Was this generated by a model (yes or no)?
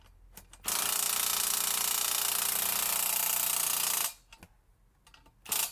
no